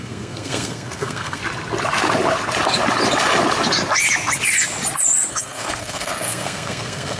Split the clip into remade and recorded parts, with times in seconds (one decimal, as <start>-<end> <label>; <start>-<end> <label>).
0.0-1.4 remade; 1.4-5.3 recorded; 5.3-7.2 remade